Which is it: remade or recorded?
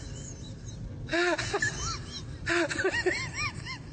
recorded